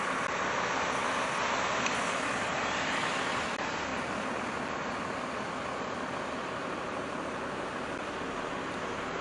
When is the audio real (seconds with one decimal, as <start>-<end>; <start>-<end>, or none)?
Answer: 0.0-6.4; 7.0-9.2

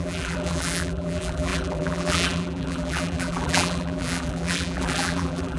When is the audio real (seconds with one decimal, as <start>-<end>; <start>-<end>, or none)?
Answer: none

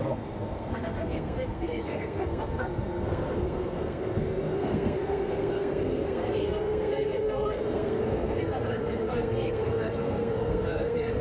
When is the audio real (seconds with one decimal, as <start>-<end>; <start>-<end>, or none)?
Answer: none

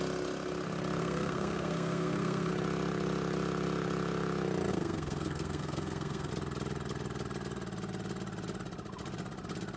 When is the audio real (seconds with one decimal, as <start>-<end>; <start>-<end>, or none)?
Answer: 0.0-1.0; 2.5-4.7; 6.3-9.8

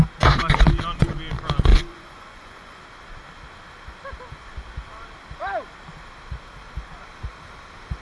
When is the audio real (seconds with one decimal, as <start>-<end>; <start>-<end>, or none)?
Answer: 0.0-1.7; 2.8-8.0

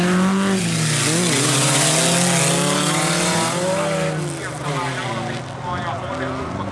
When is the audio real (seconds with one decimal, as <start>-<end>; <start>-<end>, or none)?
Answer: 0.0-6.7

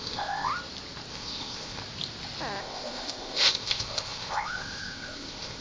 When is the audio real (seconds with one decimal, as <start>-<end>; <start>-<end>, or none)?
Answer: 0.5-1.1; 1.8-2.6